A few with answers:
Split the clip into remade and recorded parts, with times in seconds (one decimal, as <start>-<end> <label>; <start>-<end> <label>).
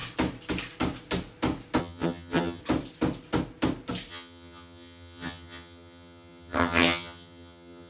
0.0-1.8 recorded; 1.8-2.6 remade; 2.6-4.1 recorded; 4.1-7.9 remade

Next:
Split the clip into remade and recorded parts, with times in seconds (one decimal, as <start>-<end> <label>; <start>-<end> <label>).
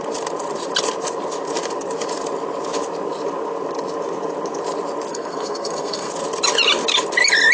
0.0-5.1 recorded; 5.1-6.1 remade; 6.1-7.5 recorded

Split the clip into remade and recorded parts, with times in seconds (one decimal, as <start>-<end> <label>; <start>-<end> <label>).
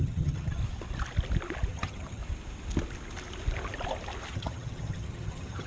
0.0-0.6 remade; 0.6-1.7 recorded; 1.7-2.2 remade; 2.2-4.3 recorded; 4.3-5.7 remade